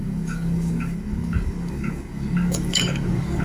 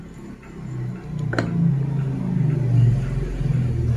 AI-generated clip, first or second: first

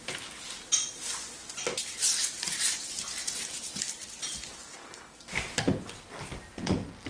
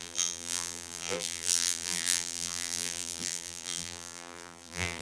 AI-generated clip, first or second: second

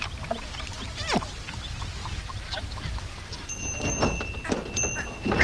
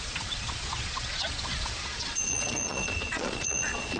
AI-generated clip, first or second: second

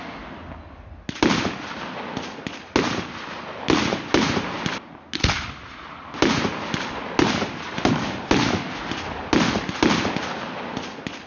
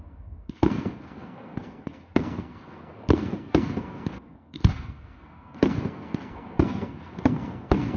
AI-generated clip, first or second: second